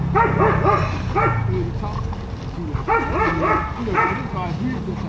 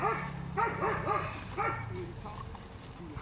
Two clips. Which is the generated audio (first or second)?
second